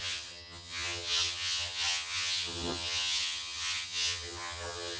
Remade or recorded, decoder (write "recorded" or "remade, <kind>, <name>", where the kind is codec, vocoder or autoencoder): remade, vocoder, HiFi-GAN